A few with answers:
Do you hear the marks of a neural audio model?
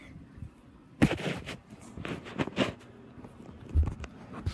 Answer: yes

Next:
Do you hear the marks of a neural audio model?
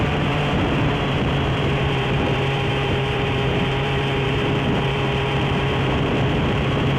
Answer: yes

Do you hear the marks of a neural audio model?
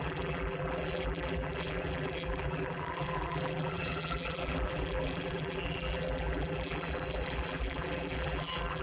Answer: yes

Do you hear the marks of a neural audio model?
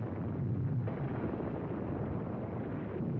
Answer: no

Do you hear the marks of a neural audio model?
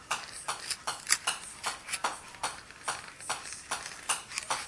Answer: no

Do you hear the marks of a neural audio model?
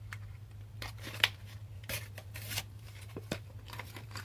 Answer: yes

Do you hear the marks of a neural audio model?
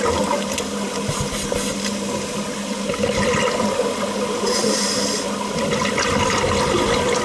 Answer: no